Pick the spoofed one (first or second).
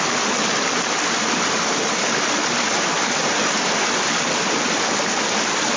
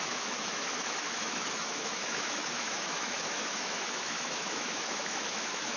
second